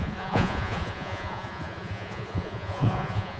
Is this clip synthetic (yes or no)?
yes